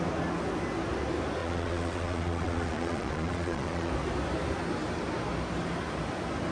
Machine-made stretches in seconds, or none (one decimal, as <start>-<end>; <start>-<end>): 1.4-3.9